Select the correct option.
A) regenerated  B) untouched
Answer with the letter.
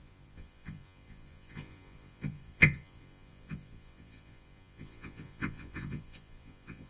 A